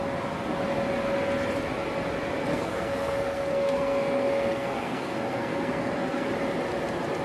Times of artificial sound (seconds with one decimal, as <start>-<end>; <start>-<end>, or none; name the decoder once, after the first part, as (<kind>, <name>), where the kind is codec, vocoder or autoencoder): 2.5-6.3 (codec, SNAC)